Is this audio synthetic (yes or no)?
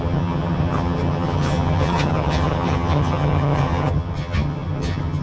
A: yes